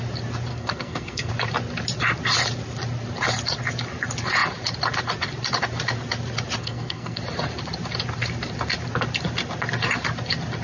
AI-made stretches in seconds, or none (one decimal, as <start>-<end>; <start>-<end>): 0.5-1.3; 6.6-7.2